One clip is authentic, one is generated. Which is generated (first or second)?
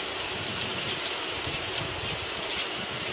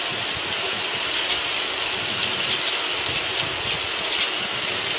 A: first